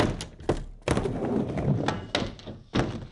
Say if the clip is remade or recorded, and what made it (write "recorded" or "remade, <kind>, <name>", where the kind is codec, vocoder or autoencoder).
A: recorded